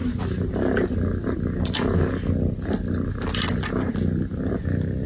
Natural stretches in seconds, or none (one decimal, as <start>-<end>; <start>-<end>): 0.0-5.1